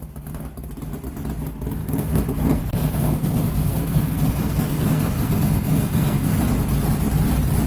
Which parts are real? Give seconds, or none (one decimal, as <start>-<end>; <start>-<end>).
0.0-1.8; 6.4-7.7